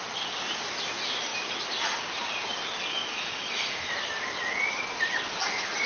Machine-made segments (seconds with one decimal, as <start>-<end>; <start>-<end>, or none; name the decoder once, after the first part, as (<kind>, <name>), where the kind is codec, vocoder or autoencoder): 2.9-3.9 (autoencoder, DAC-VAE)